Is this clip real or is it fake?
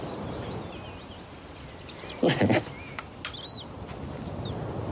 real